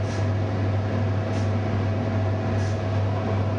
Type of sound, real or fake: real